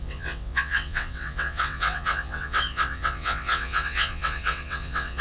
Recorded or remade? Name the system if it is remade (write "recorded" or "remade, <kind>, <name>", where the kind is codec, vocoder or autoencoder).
remade, vocoder, WaveNeXt